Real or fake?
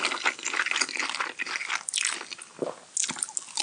real